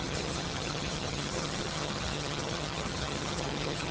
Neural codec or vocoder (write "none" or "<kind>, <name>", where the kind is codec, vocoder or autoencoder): vocoder, HiFi-GAN